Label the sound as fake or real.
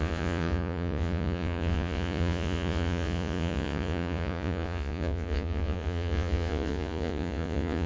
fake